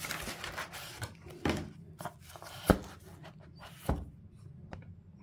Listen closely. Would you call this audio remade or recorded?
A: recorded